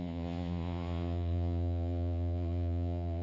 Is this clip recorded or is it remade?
remade